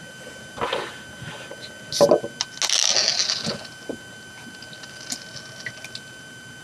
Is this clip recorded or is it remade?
recorded